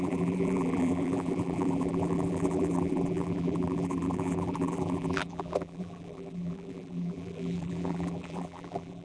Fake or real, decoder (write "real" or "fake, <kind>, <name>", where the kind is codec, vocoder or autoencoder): fake, vocoder, BigVGAN v2